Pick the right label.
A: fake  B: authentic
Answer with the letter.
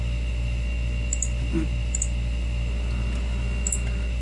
B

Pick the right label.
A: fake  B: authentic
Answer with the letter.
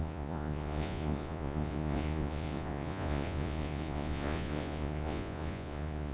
A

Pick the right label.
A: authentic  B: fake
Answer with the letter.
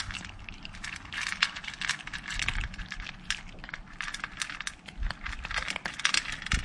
A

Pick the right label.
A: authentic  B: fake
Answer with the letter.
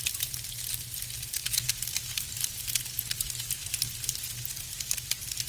A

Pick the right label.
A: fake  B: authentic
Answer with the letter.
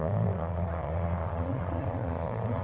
A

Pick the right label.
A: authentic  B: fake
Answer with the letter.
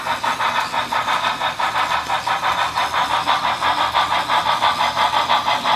A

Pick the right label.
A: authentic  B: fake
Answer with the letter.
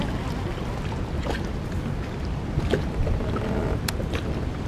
A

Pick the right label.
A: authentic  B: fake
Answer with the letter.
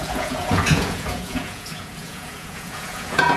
B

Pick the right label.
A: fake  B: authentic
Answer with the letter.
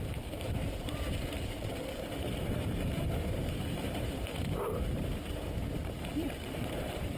A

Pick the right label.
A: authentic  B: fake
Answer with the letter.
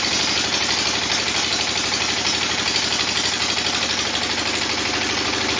A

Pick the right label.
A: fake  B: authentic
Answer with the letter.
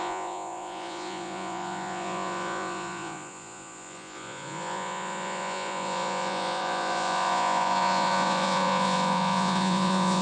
A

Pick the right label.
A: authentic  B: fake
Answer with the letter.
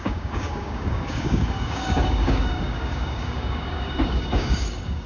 B